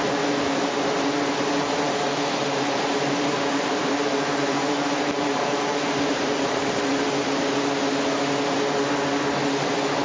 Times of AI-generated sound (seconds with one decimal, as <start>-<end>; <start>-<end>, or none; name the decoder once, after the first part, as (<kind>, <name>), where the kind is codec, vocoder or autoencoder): 2.4-6.9 (vocoder, BigVGAN v2)